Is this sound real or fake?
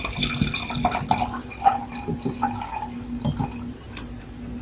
real